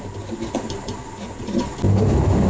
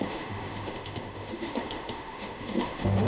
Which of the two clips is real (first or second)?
first